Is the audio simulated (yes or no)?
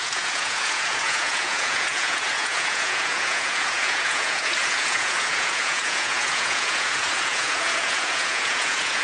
yes